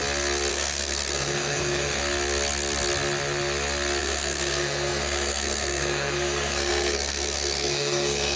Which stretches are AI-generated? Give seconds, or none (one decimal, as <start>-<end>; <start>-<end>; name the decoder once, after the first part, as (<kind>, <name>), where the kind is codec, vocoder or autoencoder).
0.5-2.0 (codec, SNAC); 4.0-8.4